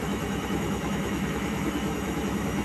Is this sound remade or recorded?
remade